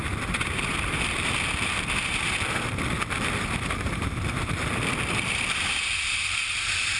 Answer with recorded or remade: remade